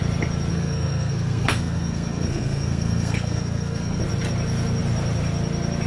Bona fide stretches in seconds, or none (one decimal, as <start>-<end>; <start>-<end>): 0.0-0.5; 4.0-5.9